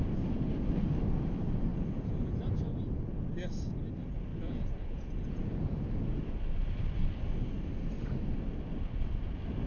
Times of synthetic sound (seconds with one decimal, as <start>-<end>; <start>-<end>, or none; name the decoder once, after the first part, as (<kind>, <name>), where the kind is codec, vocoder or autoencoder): 1.7-2.4 (vocoder, Vocos); 4.3-6.2